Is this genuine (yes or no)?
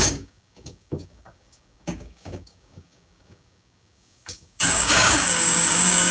no